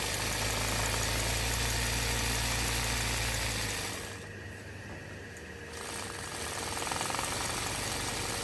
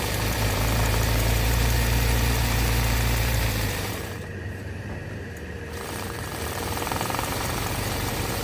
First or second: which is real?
first